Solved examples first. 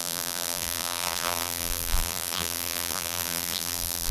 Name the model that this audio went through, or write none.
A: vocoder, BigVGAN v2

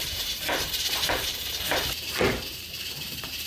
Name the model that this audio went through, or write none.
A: vocoder, BigVGAN v2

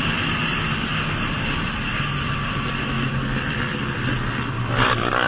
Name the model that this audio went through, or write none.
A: vocoder, BigVGAN v2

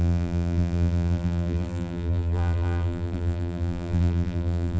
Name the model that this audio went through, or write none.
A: vocoder, BigVGAN v2